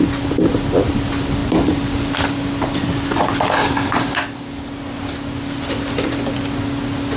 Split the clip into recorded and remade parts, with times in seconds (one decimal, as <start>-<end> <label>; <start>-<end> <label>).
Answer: 0.0-7.2 recorded